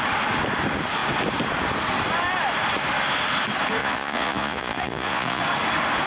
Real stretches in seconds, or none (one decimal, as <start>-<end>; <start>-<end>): 0.0-3.8; 5.4-6.1